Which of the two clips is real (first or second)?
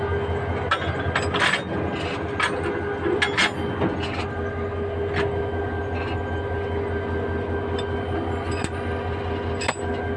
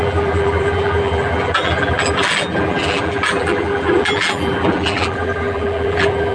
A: first